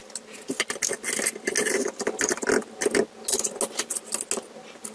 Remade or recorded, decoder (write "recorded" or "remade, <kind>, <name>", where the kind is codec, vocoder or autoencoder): recorded